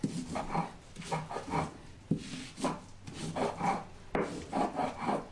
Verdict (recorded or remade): recorded